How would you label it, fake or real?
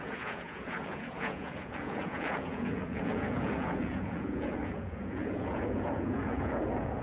fake